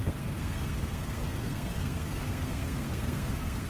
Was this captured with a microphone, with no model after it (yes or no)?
no